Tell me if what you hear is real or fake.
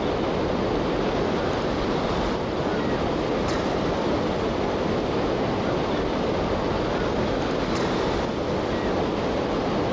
real